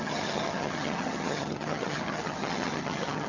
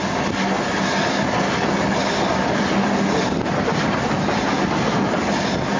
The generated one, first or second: first